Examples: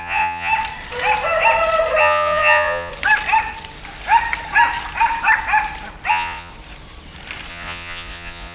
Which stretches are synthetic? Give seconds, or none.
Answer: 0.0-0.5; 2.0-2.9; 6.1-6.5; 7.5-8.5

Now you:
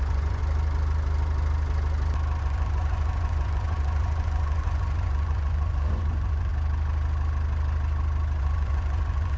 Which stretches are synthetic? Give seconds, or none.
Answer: 0.0-0.4; 2.4-6.5; 8.4-9.4

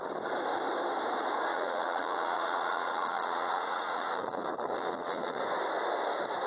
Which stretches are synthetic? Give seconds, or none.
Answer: 1.5-5.4